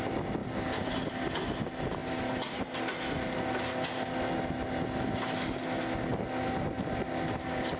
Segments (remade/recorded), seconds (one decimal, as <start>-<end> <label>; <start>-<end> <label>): 0.0-7.8 recorded